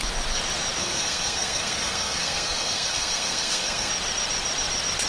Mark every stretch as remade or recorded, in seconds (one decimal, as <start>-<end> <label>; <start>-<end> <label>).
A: 0.0-0.8 recorded; 0.8-3.9 remade; 3.9-5.1 recorded